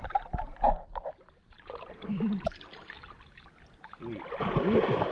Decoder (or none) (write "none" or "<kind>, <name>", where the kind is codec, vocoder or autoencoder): none